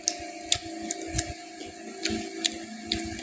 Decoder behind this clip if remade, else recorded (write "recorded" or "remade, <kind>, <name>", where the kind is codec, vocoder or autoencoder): recorded